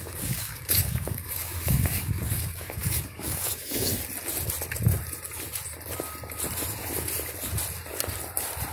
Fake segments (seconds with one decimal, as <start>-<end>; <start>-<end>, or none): 0.0-3.9